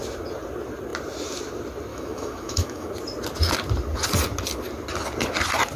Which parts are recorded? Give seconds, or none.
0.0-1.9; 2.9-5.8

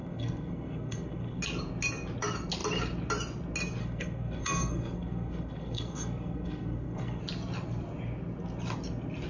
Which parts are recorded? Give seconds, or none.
1.4-3.8; 7.2-9.3

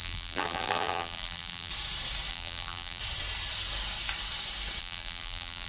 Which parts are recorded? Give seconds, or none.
1.7-2.3; 3.0-4.8

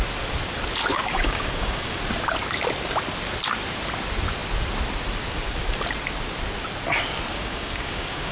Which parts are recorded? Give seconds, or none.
0.0-0.9; 2.0-7.3